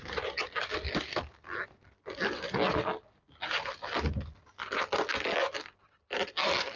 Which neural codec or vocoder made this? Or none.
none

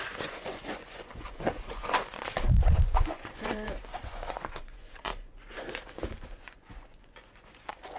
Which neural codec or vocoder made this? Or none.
vocoder, Vocos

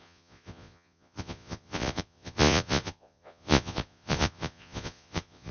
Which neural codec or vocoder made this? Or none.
vocoder, Vocos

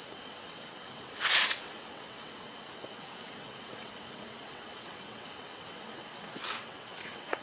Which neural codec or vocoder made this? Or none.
vocoder, WaveNeXt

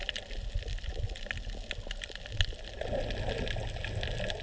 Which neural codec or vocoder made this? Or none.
none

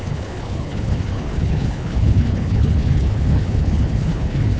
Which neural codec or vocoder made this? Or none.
codec, HILCodec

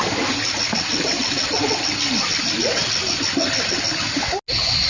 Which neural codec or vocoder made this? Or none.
none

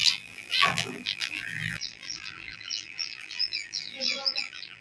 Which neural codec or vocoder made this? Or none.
vocoder, BigVGAN v2